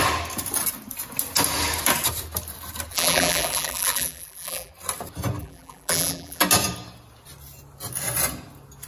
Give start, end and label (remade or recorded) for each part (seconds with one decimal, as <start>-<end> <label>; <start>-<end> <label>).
0.0-2.9 recorded; 2.9-4.7 remade; 4.7-5.4 recorded; 5.4-6.4 remade; 6.4-8.9 recorded